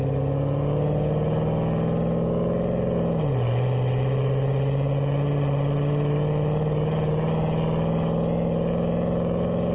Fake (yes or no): no